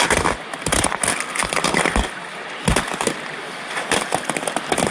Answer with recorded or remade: recorded